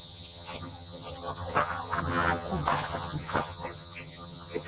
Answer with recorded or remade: remade